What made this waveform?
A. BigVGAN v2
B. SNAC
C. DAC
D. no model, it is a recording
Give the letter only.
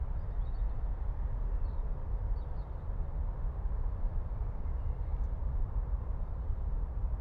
A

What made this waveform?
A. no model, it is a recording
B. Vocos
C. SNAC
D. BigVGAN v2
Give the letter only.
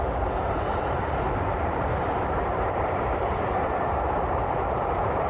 D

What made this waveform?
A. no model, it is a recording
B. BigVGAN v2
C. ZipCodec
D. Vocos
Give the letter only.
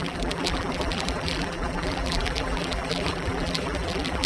B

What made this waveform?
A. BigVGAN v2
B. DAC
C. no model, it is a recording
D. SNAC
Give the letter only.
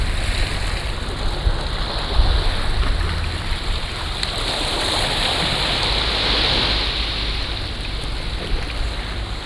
C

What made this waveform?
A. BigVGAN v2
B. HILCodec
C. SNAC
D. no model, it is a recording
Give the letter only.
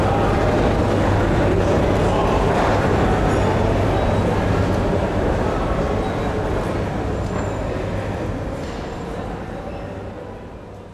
D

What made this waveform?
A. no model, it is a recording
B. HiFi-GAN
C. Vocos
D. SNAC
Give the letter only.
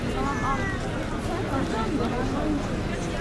A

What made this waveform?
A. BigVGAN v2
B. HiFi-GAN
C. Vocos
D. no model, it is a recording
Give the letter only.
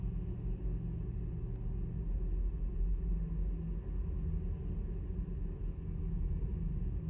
D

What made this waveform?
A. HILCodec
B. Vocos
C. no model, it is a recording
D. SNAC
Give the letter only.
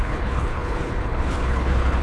A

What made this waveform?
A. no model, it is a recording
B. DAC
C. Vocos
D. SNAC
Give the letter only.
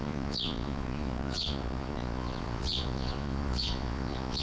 C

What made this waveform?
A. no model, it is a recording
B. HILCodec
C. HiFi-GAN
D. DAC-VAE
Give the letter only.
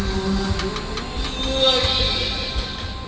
A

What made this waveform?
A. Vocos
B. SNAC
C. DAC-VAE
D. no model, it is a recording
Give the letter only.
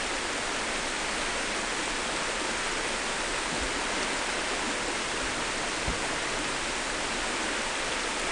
D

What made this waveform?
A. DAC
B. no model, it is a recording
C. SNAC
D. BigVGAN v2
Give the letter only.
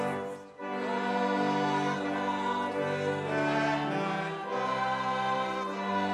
B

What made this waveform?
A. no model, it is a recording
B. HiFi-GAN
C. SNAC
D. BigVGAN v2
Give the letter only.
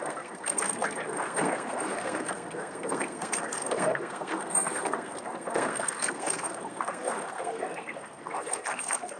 C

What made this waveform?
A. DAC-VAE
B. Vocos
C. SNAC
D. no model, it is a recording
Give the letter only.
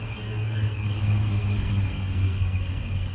C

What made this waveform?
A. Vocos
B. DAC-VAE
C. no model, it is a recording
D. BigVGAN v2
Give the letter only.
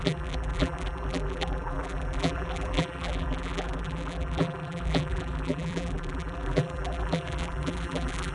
D